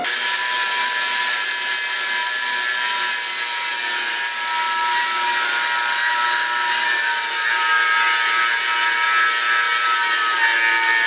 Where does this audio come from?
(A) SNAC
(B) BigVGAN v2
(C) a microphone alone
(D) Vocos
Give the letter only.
C